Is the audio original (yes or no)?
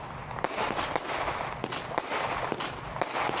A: yes